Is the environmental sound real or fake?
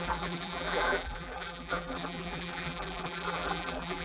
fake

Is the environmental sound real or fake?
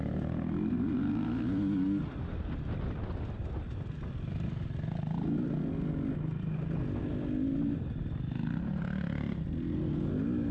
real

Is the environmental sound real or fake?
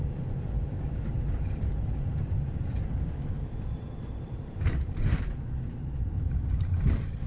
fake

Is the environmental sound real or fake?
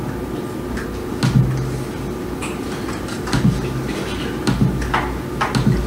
real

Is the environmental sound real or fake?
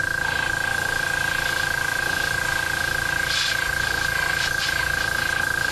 real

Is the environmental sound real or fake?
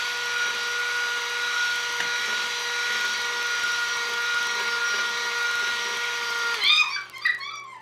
real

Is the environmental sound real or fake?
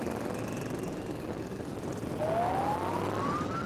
real